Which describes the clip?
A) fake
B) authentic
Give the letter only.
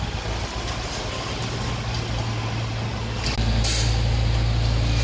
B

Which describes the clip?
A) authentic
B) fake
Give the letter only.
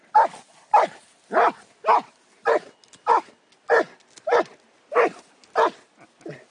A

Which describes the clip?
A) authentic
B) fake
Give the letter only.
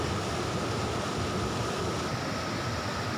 A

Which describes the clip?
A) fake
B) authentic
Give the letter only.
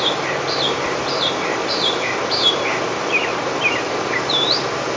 A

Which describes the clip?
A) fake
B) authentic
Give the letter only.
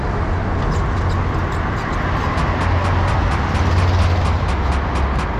B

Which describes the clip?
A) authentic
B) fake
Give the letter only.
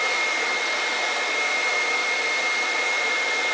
B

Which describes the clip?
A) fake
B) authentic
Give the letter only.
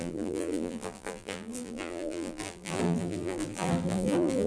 A